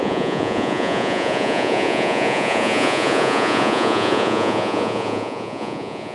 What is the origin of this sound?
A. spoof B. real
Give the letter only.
A